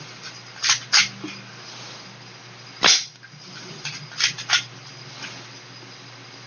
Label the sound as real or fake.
real